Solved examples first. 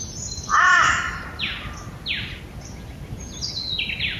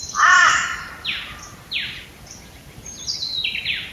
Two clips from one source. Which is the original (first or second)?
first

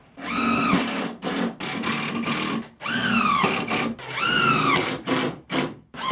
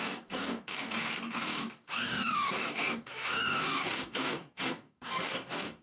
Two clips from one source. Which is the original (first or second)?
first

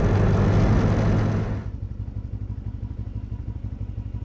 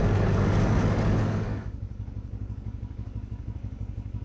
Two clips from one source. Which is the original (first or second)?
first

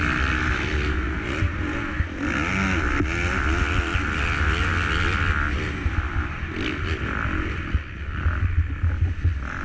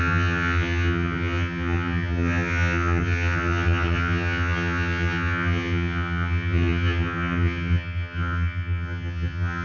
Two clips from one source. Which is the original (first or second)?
first